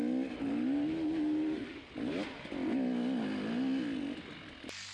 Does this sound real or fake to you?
real